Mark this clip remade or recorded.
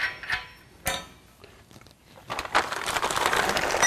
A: remade